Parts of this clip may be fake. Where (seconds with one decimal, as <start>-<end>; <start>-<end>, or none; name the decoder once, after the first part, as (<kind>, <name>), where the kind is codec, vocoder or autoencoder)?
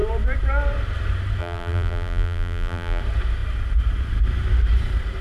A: 1.4-3.0 (vocoder, BigVGAN v2)